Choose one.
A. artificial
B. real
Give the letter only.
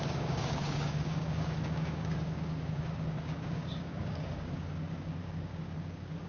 A